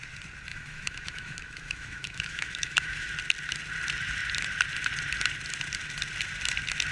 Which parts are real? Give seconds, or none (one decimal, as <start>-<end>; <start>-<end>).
0.0-0.5; 3.1-6.9